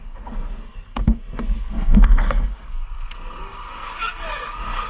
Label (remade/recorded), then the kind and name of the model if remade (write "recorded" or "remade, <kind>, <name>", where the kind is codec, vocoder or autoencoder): remade, codec, SNAC